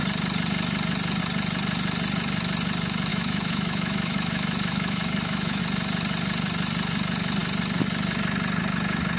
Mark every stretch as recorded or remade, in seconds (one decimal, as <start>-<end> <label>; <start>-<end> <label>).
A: 0.0-3.1 recorded; 3.1-5.6 remade; 5.6-9.2 recorded